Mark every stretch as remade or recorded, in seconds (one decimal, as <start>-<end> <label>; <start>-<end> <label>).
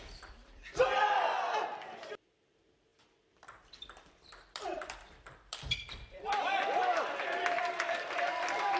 0.0-8.8 remade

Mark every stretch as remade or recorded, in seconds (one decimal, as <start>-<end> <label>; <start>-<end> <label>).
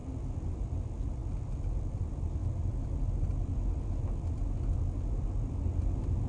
0.0-2.4 remade; 2.4-6.3 recorded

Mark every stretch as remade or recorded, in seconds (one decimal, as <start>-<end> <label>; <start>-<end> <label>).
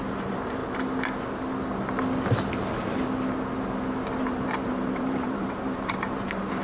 0.0-0.6 remade; 0.6-4.2 recorded; 4.2-6.6 remade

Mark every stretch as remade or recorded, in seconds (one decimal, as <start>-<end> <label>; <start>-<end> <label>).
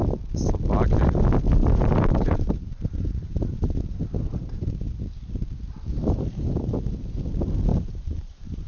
0.0-1.6 recorded; 1.6-4.7 remade; 4.7-5.9 recorded; 5.9-6.8 remade; 6.8-7.7 recorded; 7.7-8.7 remade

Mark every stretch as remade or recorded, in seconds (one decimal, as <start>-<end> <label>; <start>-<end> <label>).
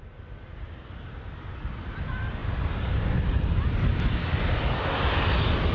0.0-2.4 remade; 2.4-2.9 recorded; 2.9-3.9 remade; 3.9-5.3 recorded; 5.3-5.7 remade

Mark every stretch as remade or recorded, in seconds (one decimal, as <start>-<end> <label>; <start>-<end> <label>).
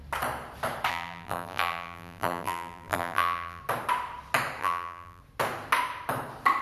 0.0-0.9 recorded; 0.9-3.6 remade; 3.6-4.6 recorded; 4.6-5.2 remade; 5.2-6.6 recorded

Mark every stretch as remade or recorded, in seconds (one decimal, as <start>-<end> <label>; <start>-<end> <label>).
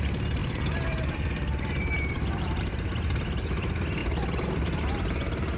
0.0-0.4 recorded; 0.4-2.6 remade; 2.6-5.6 recorded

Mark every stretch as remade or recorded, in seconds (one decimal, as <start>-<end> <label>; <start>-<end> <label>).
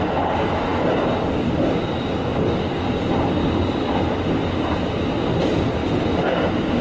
0.0-6.8 recorded